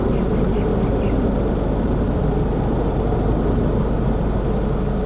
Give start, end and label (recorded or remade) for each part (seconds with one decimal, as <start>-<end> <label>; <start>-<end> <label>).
0.0-5.1 recorded